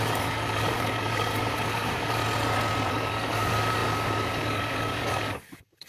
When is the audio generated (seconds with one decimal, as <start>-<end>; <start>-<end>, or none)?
0.0-2.2; 2.9-5.9